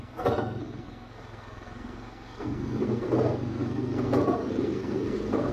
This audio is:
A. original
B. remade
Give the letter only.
B